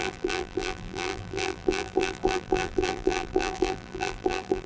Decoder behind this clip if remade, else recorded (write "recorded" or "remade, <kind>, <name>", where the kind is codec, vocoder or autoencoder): remade, vocoder, BigVGAN v2